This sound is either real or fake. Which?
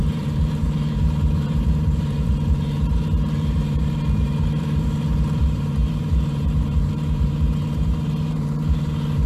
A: fake